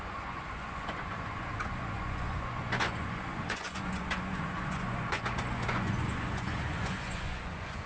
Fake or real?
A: fake